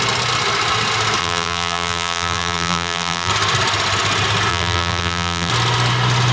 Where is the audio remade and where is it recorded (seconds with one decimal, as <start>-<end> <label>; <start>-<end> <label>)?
0.0-1.2 recorded; 1.2-3.3 remade; 3.3-4.5 recorded; 4.5-5.5 remade; 5.5-6.3 recorded